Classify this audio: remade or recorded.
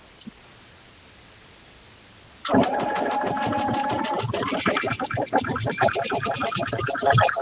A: recorded